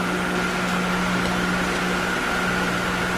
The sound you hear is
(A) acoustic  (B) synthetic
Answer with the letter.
A